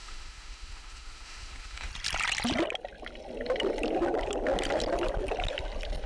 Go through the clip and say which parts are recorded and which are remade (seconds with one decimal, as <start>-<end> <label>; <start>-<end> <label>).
0.0-1.9 remade; 1.9-6.1 recorded